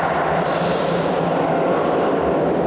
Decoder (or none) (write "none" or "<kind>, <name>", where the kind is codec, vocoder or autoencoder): none